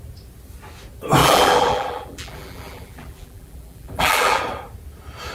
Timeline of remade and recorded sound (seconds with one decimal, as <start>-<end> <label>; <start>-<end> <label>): 0.0-1.2 recorded; 1.2-4.4 remade; 4.4-5.3 recorded